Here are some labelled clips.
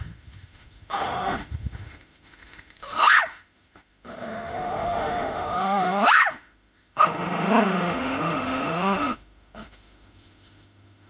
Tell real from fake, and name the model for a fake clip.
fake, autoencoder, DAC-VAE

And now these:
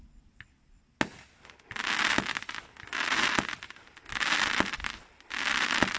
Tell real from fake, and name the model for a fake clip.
real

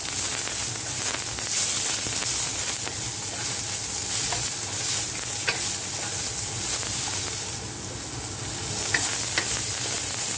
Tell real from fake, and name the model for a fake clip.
real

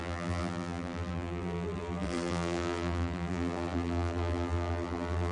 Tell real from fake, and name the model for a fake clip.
fake, vocoder, BigVGAN v2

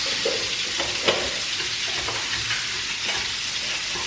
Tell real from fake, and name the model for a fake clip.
real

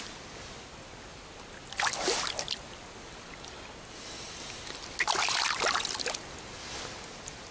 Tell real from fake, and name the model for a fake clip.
real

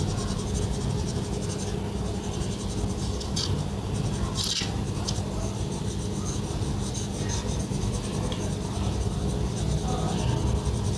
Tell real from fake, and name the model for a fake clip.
real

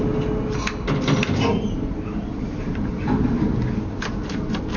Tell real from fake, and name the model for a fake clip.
real